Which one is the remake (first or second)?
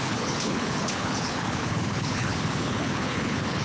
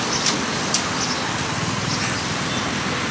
first